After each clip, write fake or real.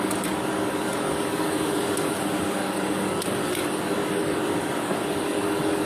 fake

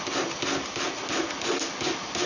real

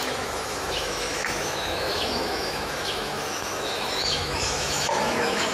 fake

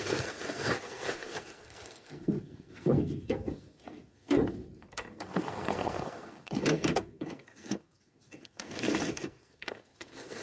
fake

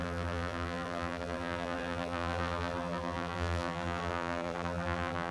fake